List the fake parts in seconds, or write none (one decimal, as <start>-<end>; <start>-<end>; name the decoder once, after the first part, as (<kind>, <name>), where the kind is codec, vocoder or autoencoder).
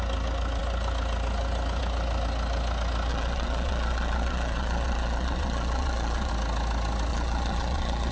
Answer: 3.1-6.3 (vocoder, Vocos); 7.1-8.1